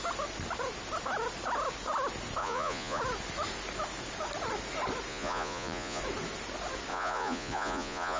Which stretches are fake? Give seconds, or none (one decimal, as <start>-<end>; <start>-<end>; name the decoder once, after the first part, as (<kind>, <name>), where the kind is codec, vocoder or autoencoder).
2.4-3.0 (vocoder, Vocos); 5.1-6.0; 6.9-8.2